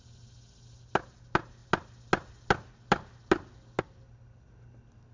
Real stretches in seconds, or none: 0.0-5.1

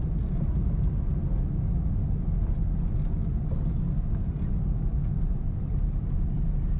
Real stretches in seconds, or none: 0.0-6.8